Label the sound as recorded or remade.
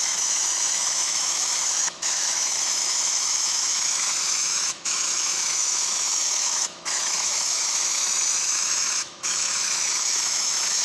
remade